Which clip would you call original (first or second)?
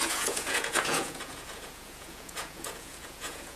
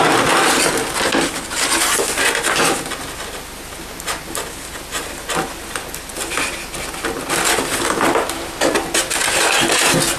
second